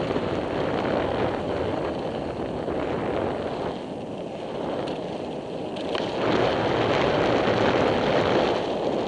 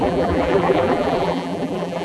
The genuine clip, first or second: first